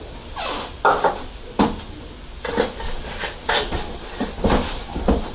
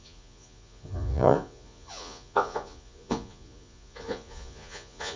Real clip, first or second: first